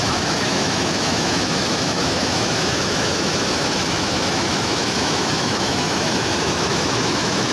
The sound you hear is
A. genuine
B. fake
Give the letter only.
B